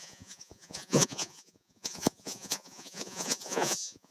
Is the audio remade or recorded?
remade